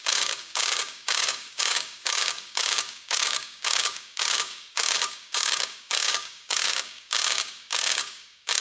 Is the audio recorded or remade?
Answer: remade